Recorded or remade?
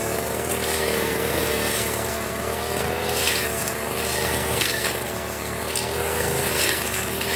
remade